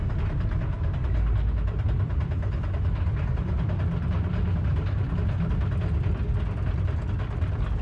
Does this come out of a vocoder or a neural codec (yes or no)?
no